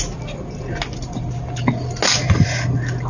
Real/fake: real